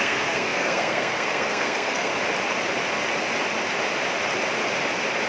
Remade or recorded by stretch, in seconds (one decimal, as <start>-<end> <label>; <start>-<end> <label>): 0.0-2.1 remade; 2.1-5.3 recorded